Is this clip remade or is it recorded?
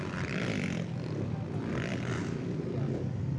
recorded